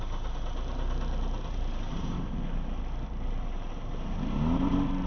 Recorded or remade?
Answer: recorded